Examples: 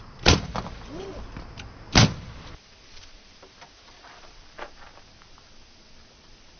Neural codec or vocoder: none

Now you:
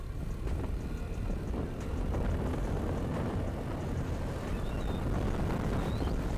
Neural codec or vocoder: none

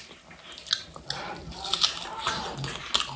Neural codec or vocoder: none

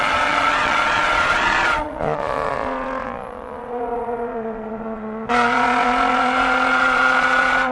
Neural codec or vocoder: vocoder, Vocos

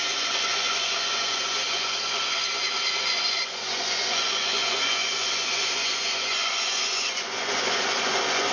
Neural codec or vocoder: vocoder, Vocos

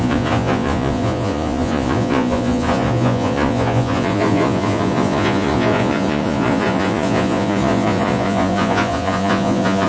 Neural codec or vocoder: vocoder, Vocos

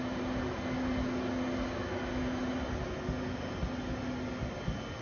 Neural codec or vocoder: none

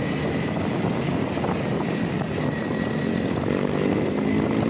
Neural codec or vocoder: none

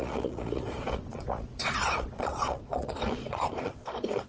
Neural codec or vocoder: vocoder, Vocos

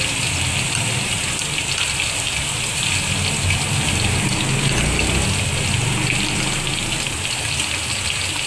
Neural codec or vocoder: none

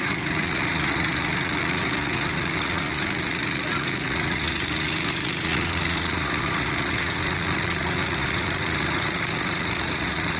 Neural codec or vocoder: vocoder, Vocos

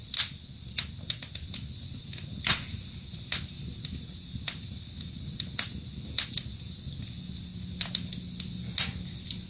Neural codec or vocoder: none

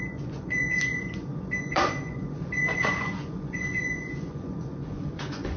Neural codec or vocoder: vocoder, Vocos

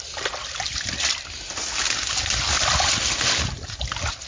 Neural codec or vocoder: none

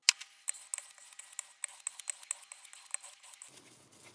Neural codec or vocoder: none